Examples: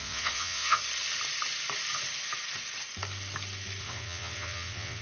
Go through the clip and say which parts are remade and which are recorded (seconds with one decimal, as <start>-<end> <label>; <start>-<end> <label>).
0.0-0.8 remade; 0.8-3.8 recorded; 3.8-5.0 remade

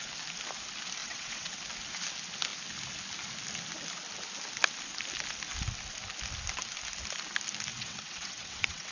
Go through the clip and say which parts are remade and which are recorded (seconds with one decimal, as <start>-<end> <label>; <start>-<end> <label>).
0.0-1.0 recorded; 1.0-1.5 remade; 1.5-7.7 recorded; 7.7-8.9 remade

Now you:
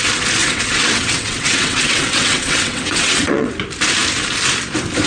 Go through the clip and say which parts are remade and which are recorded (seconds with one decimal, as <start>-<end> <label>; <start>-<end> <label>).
0.0-0.4 recorded; 0.4-3.5 remade; 3.5-5.1 recorded

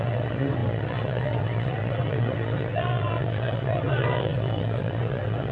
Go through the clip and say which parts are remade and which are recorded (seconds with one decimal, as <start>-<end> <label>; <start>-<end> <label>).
0.0-5.5 remade